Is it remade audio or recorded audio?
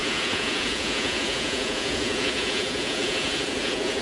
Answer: remade